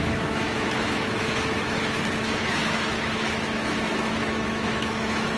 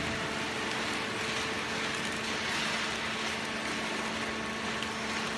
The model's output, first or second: first